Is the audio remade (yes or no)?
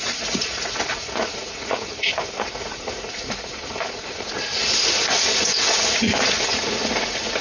yes